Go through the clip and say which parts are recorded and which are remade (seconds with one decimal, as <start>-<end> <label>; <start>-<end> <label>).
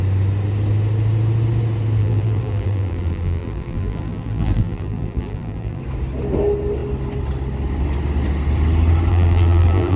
0.0-2.0 recorded; 2.0-5.8 remade; 5.8-9.1 recorded; 9.1-10.0 remade